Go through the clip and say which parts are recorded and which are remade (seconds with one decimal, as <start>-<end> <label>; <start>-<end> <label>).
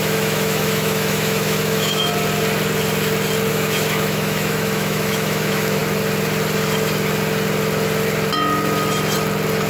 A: 0.0-2.1 remade; 2.1-3.5 recorded; 3.5-5.8 remade; 5.8-9.7 recorded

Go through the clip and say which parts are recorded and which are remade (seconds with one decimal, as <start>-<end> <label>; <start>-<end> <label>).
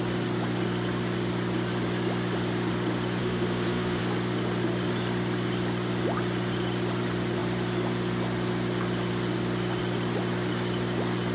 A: 0.0-3.2 recorded; 3.2-4.0 remade; 4.0-11.3 recorded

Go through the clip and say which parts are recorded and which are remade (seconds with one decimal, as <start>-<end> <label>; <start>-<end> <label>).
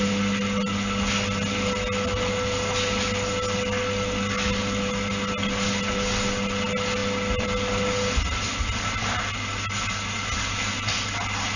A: 0.0-11.6 recorded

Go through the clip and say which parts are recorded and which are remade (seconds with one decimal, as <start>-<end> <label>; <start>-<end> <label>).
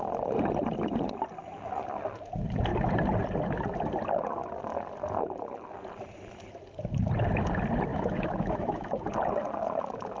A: 0.0-7.9 recorded; 7.9-9.1 remade; 9.1-10.2 recorded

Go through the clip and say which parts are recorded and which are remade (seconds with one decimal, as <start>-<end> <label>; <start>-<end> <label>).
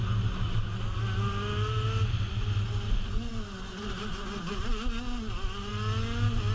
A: 0.0-6.5 recorded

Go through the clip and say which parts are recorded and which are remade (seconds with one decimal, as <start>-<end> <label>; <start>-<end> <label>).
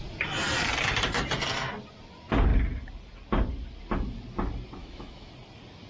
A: 0.0-4.8 recorded; 4.8-5.3 remade; 5.3-5.9 recorded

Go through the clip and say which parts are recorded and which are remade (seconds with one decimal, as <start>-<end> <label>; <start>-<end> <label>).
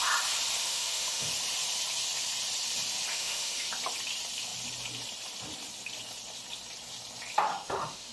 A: 0.0-0.6 recorded; 0.6-1.3 remade; 1.3-3.1 recorded; 3.1-3.7 remade; 3.7-7.5 recorded; 7.5-8.1 remade